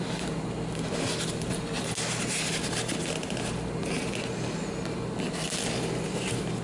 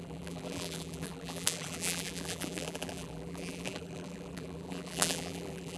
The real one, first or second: first